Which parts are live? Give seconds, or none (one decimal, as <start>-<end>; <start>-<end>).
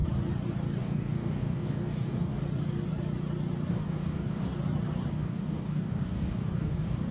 0.0-0.8; 2.4-3.7; 4.5-5.1